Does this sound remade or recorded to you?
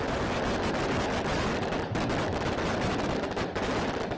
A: recorded